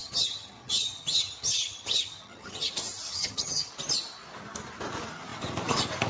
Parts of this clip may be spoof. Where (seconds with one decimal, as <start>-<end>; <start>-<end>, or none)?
0.0-2.7; 3.1-3.7